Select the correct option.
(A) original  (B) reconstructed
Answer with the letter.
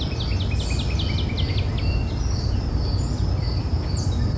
A